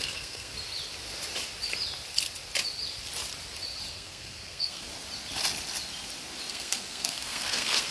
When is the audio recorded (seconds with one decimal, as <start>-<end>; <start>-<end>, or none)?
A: 0.5-3.9; 4.9-6.5